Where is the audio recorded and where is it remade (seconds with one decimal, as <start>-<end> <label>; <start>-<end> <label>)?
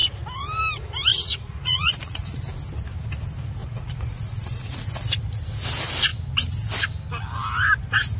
0.0-1.1 recorded; 1.1-2.4 remade; 2.4-3.6 recorded; 3.6-4.8 remade; 4.8-8.2 recorded